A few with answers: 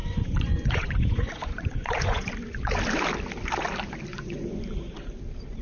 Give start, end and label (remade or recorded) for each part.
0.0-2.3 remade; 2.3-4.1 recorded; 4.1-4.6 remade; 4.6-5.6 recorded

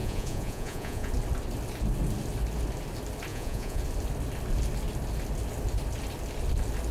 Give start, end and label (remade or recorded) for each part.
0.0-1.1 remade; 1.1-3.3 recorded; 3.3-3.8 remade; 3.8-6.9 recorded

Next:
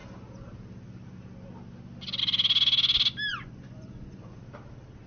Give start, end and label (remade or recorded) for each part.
0.0-3.3 recorded; 3.3-4.4 remade; 4.4-5.1 recorded